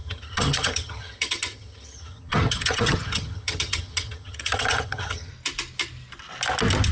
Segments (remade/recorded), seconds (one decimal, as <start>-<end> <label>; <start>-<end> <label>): 0.0-5.3 remade; 5.3-6.9 recorded